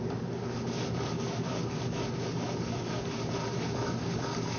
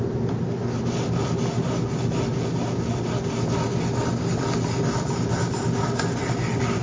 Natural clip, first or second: second